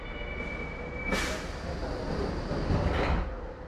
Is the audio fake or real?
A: real